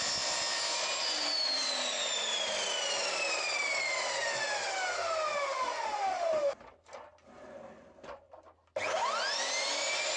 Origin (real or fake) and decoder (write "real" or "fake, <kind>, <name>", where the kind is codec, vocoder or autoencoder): real